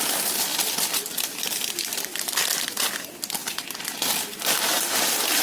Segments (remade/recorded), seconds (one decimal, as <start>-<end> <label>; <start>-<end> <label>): 0.0-5.4 recorded